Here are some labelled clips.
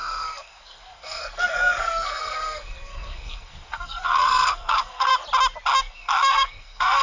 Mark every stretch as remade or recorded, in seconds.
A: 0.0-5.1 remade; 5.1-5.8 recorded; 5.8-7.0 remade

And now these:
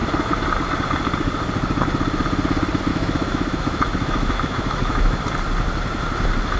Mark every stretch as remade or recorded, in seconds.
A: 0.0-2.9 recorded; 2.9-5.2 remade; 5.2-6.6 recorded

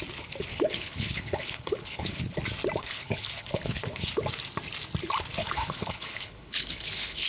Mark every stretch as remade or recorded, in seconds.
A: 0.0-0.5 recorded; 0.5-2.2 remade; 2.2-2.8 recorded; 2.8-4.1 remade; 4.1-5.4 recorded; 5.4-7.3 remade

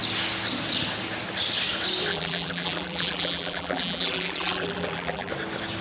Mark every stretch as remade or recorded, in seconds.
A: 0.0-2.1 recorded; 2.1-5.3 remade; 5.3-5.8 recorded

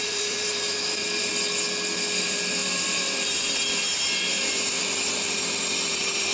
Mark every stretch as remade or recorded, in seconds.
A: 0.0-1.3 remade; 1.3-2.2 recorded; 2.2-6.3 remade